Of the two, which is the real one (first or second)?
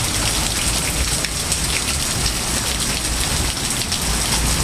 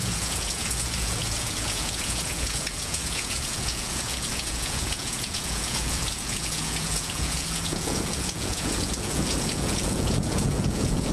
first